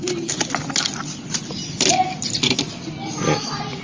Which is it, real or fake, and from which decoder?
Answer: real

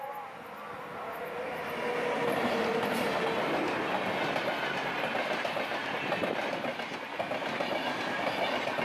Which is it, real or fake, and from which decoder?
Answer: real